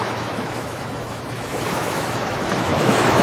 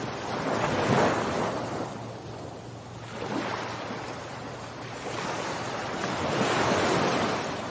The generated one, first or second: first